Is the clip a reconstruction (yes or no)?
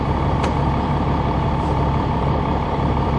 yes